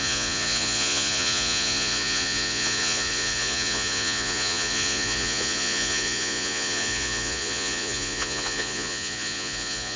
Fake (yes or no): yes